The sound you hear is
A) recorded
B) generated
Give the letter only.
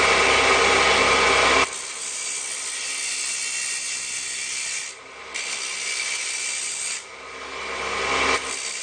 A